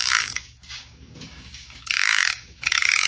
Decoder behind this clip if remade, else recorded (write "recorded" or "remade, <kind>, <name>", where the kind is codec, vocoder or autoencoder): remade, codec, DAC